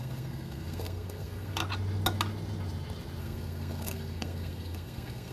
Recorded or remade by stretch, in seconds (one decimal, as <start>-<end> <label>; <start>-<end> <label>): 0.0-1.6 remade; 1.6-3.2 recorded; 3.2-5.3 remade